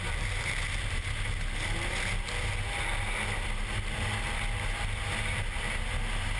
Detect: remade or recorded recorded